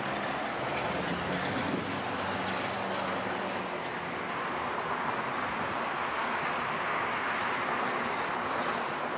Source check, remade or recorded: recorded